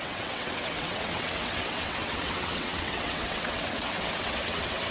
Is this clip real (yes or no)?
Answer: no